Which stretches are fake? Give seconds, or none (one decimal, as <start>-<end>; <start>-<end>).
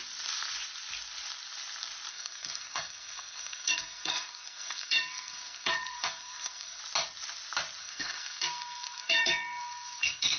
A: 2.1-6.8; 7.8-10.4